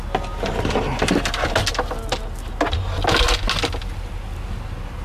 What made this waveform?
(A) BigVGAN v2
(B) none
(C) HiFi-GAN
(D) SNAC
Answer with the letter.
B